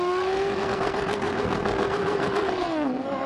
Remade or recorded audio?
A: remade